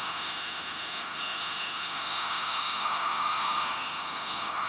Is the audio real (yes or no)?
no